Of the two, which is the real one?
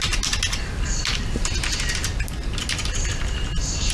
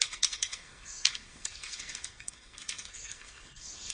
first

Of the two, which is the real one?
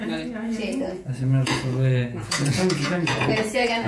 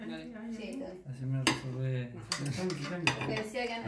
second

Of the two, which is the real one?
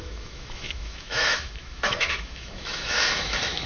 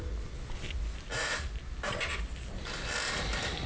second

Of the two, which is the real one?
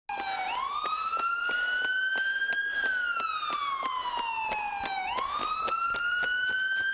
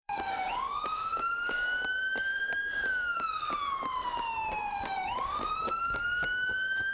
first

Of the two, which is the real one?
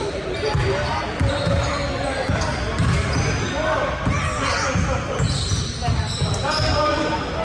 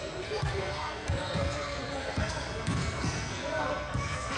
first